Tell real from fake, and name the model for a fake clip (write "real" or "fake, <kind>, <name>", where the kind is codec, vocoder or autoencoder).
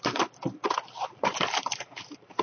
fake, vocoder, BigVGAN v2